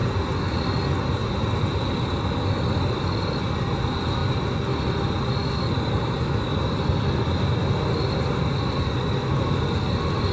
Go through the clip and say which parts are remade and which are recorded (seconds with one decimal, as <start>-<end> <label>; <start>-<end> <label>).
0.0-10.3 recorded